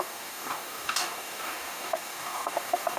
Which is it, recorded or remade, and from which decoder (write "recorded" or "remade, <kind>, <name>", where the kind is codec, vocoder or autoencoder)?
remade, codec, DAC